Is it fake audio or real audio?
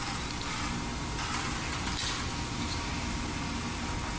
real